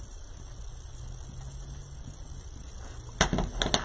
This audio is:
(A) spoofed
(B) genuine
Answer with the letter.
B